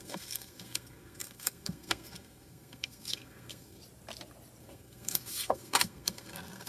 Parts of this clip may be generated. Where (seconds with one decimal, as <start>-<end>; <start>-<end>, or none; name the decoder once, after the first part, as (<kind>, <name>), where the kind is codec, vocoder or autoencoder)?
0.0-3.8 (codec, SNAC); 4.6-6.7